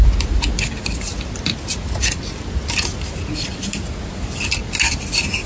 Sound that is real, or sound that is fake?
real